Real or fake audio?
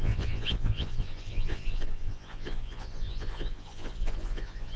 fake